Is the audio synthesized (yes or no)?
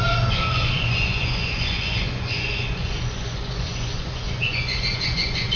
yes